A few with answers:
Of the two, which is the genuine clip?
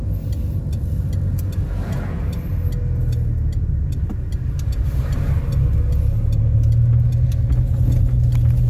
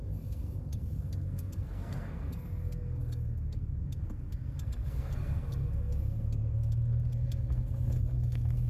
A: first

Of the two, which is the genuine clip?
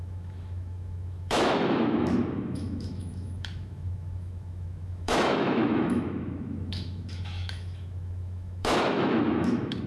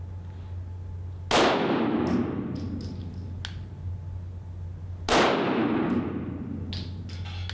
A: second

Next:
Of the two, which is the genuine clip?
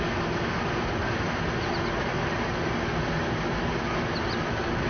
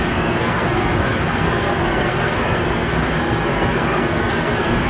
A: first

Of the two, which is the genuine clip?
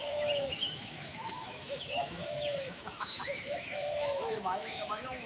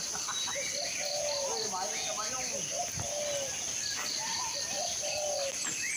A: second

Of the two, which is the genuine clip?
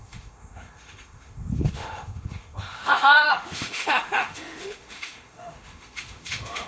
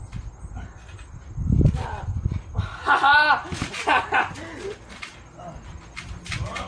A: second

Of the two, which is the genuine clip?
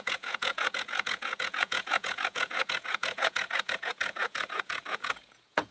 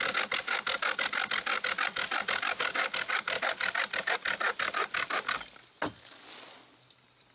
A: second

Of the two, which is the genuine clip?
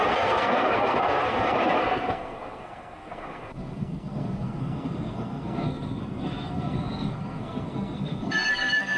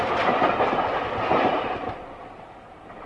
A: second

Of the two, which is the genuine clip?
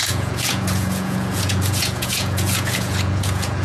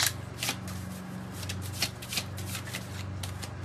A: second